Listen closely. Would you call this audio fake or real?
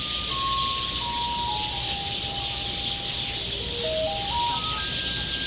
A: real